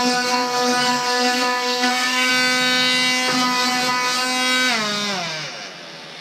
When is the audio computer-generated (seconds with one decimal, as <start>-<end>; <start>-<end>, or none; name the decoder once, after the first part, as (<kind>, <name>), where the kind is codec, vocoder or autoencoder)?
0.0-2.3 (codec, SNAC)